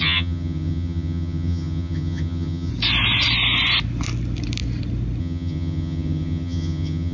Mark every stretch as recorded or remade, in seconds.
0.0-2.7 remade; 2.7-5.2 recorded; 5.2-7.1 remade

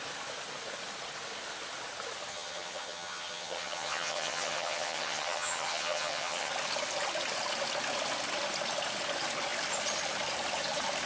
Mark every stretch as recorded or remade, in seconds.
0.0-2.3 recorded; 2.3-6.5 remade; 6.5-11.1 recorded

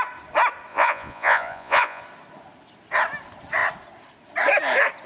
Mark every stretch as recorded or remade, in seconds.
0.0-0.7 recorded; 0.7-2.0 remade; 2.0-5.1 recorded